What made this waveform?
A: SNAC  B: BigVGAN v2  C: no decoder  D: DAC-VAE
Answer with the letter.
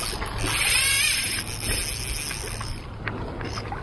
C